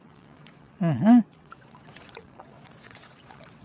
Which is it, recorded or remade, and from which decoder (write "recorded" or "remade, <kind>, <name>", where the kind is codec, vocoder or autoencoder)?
remade, vocoder, WaveNeXt